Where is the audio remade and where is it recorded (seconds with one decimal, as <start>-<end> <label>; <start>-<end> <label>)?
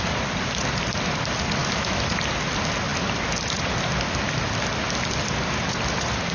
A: 0.0-1.6 recorded; 1.6-2.2 remade; 2.2-6.3 recorded